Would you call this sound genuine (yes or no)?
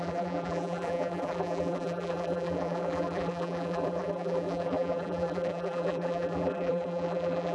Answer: no